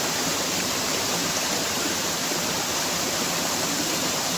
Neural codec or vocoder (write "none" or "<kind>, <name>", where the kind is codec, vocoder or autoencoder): vocoder, BigVGAN v2